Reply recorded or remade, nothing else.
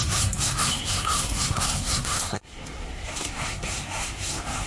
remade